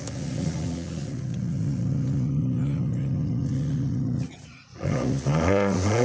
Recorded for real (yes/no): no